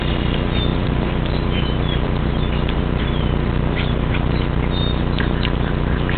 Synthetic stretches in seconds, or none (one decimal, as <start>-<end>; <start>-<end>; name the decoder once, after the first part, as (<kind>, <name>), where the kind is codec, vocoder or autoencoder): 0.7-4.4 (vocoder, BigVGAN v2)